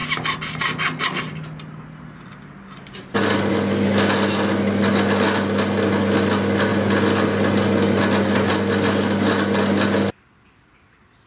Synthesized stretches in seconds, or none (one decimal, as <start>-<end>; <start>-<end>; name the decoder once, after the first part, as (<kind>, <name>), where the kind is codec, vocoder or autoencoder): none